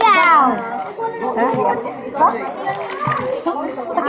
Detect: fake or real real